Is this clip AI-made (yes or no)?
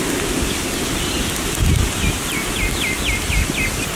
no